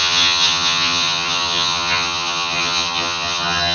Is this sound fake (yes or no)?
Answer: yes